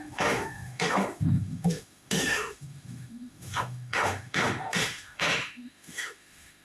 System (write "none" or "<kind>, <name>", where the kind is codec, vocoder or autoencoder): autoencoder, DAC-VAE